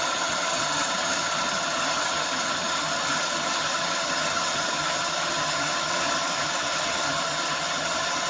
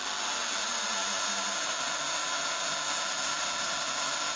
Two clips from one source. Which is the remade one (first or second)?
first